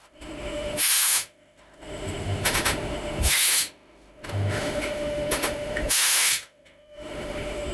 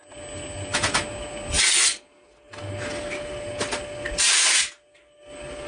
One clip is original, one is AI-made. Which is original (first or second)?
second